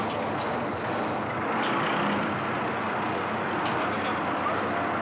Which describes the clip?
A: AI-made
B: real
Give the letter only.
B